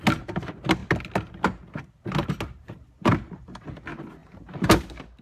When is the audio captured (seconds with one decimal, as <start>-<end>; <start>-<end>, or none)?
0.0-5.2